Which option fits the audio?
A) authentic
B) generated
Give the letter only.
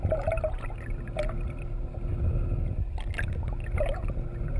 A